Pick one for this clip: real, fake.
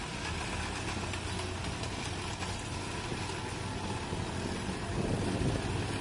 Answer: real